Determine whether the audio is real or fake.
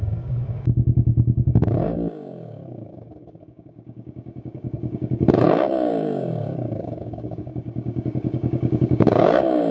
fake